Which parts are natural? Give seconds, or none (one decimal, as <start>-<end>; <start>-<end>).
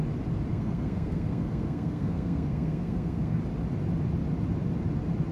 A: 0.0-0.5; 3.4-5.3